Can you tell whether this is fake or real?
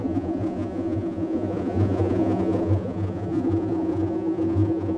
fake